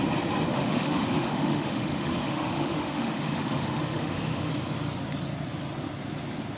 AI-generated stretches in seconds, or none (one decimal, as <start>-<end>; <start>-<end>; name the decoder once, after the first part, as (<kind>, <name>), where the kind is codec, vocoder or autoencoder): 0.5-4.5 (autoencoder, DAC-VAE)